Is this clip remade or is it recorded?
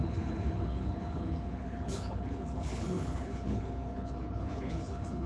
remade